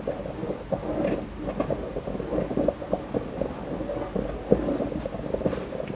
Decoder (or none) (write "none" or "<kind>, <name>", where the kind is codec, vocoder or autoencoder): none